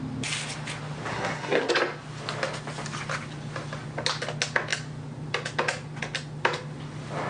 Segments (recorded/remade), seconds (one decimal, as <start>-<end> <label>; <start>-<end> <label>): 0.0-1.1 recorded; 1.1-1.7 remade; 1.7-7.3 recorded